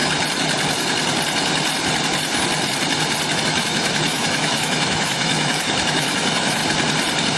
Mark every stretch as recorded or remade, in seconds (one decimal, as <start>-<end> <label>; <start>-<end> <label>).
0.0-3.4 recorded; 3.4-6.6 remade; 6.6-7.4 recorded